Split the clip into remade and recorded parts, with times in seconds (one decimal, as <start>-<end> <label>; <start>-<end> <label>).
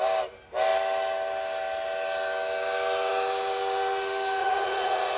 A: 0.0-4.4 recorded; 4.4-5.2 remade